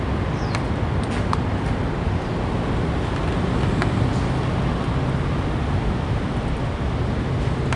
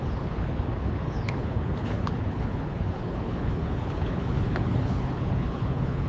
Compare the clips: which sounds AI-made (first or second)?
second